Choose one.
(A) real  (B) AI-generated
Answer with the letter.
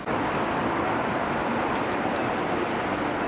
A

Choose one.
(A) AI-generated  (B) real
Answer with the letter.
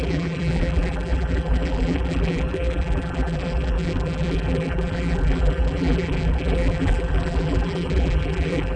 A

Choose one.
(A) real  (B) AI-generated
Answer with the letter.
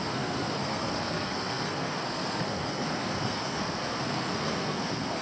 B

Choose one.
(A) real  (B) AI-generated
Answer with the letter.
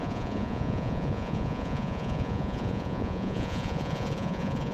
B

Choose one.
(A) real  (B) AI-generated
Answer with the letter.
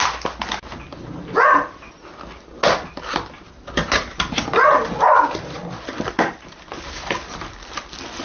A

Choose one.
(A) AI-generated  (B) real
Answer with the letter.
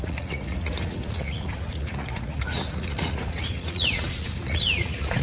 A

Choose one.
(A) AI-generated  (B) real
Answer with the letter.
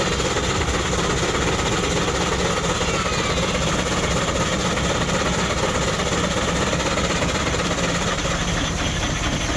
B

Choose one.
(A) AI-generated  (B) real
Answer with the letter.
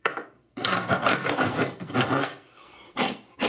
A